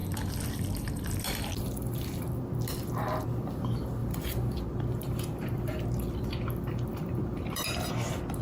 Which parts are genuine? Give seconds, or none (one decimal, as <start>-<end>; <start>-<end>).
2.4-4.0; 7.9-8.4

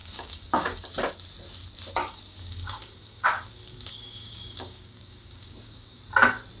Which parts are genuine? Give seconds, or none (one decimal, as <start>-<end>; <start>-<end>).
0.8-2.0; 6.0-6.6

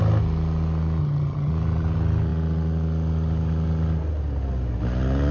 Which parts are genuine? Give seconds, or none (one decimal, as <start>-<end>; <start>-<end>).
0.0-1.0; 1.5-5.3

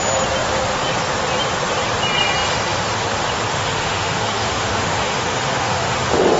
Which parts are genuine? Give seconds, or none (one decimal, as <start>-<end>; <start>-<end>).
0.0-3.5